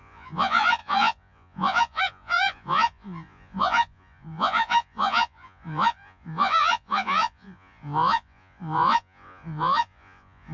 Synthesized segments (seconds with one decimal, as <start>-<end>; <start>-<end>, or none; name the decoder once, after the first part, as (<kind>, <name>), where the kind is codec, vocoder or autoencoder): 0.0-10.5 (vocoder, Vocos)